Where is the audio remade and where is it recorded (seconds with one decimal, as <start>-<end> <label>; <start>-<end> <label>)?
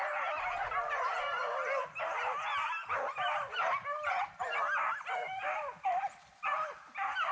0.0-7.3 recorded